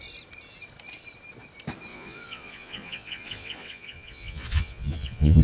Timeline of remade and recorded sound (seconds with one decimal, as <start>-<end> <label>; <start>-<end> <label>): 0.0-1.9 recorded; 1.9-5.4 remade